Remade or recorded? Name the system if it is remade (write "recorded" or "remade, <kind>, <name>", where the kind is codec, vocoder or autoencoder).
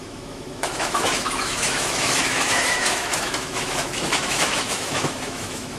remade, autoencoder, DAC-VAE